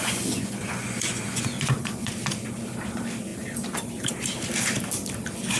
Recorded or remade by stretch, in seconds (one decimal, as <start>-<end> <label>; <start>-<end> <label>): 0.0-2.1 remade; 2.1-5.6 recorded